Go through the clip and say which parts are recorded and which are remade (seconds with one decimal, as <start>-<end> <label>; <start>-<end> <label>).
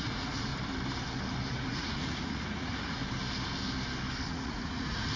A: 0.0-0.5 remade; 0.5-1.5 recorded; 1.5-3.0 remade; 3.0-4.3 recorded; 4.3-5.2 remade